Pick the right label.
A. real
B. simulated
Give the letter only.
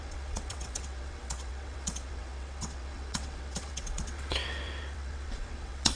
B